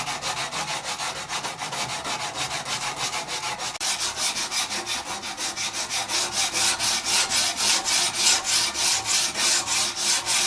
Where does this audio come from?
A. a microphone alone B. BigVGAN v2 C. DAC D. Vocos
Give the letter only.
A